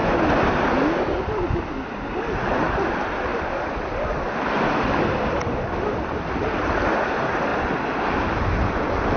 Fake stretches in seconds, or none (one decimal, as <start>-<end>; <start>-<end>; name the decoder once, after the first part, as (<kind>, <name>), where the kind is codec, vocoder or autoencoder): 3.3-6.3 (vocoder, BigVGAN v2)